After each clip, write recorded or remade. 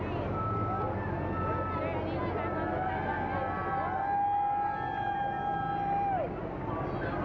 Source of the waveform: recorded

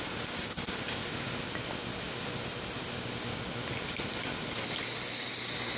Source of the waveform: recorded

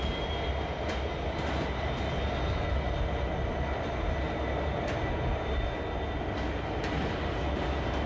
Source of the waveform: recorded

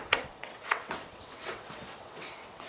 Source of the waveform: remade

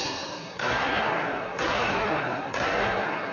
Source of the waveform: remade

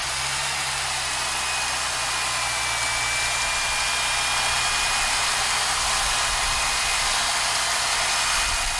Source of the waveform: recorded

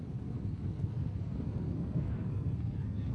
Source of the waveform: remade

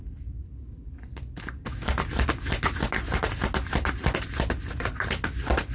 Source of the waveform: recorded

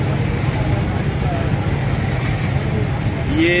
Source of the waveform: recorded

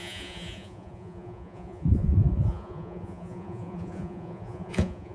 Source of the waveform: remade